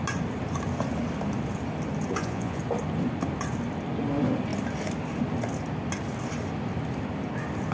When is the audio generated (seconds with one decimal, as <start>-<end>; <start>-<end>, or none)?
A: 2.1-2.6